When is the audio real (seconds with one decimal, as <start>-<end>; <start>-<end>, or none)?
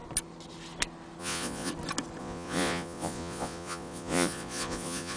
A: 0.0-1.2; 1.7-2.2